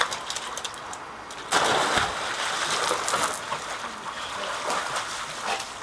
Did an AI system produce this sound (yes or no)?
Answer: no